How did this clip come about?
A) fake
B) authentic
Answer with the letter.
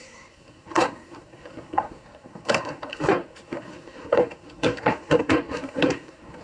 A